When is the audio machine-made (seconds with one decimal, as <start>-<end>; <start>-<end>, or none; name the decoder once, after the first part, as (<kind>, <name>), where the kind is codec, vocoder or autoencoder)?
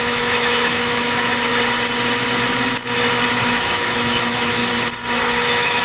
0.0-1.5 (autoencoder, DAC-VAE); 3.4-4.6; 5.1-5.8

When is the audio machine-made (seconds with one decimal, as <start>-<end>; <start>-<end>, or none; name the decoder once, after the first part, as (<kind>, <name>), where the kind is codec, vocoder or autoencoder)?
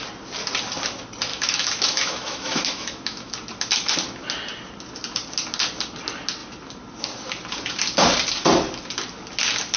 1.3-3.3 (autoencoder, DAC-VAE)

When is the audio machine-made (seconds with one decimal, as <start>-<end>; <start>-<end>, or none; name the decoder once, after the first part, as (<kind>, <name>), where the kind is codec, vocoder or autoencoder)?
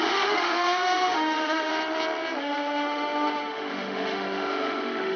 0.0-1.7 (autoencoder, DAC-VAE); 2.4-5.2